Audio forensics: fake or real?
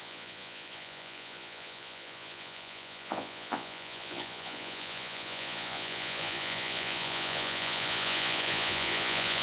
fake